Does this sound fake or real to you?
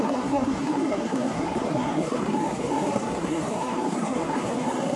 fake